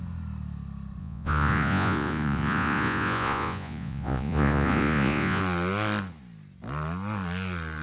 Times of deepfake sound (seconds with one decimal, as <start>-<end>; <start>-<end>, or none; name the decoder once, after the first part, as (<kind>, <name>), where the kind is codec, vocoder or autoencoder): 1.0-5.4 (vocoder, Vocos)